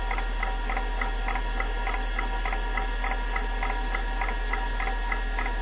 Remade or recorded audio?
recorded